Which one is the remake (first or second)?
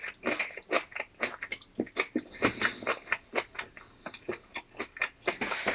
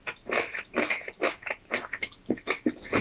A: second